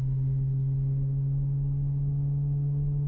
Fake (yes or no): no